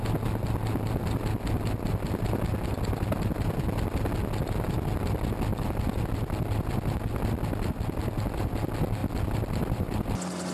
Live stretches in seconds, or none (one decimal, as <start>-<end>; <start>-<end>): 0.0-5.5; 6.0-9.0; 10.1-10.5